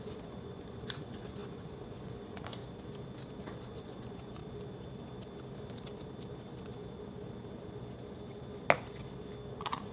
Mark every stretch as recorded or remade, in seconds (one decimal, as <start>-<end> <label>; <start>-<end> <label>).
0.0-2.6 remade; 2.6-3.6 recorded; 3.6-4.4 remade; 4.4-9.5 recorded; 9.5-9.9 remade